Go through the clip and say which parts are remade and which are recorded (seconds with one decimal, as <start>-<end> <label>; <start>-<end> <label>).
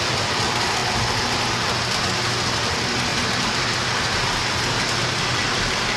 0.0-3.1 recorded; 3.1-3.6 remade; 3.6-6.0 recorded